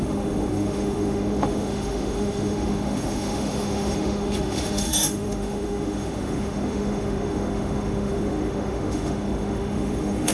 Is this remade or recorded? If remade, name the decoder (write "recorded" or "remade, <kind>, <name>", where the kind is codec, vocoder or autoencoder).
remade, autoencoder, DAC-VAE